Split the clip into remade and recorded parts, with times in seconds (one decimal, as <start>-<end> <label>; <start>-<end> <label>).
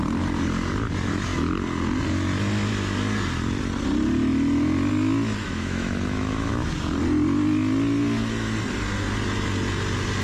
0.0-5.4 recorded; 5.4-6.5 remade; 6.5-10.2 recorded